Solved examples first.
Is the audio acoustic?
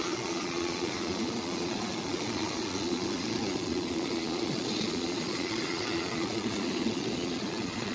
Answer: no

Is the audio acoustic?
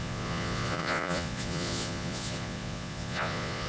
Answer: no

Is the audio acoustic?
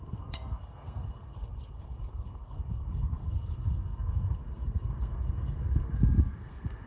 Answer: no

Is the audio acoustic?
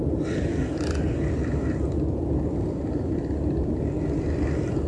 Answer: yes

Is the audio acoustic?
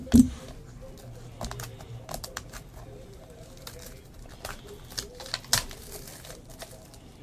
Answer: yes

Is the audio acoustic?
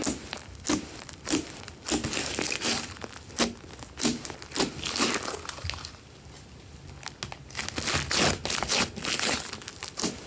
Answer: yes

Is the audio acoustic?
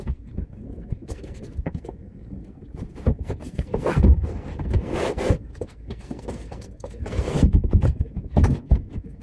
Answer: no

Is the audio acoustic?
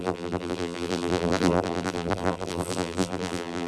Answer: no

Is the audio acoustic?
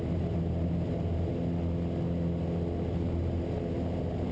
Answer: yes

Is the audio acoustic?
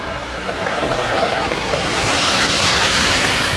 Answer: no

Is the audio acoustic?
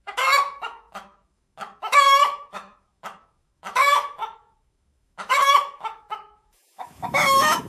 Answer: no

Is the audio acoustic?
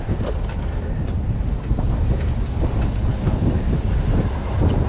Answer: yes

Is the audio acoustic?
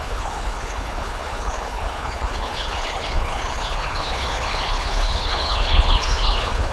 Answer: no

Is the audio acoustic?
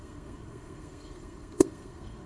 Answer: no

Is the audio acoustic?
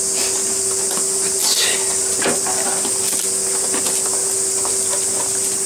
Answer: yes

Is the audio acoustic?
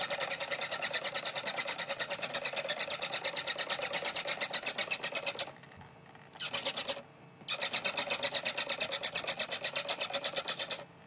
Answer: yes